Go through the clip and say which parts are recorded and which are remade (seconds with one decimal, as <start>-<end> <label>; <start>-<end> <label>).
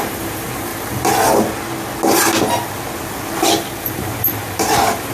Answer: 0.0-0.7 remade; 0.7-3.8 recorded; 3.8-5.1 remade